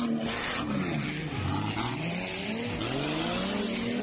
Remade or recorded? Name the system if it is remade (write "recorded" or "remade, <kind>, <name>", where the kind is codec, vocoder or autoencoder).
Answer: recorded